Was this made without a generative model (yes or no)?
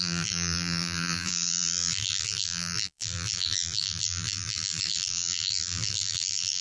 no